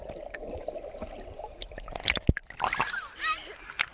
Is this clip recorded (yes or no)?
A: yes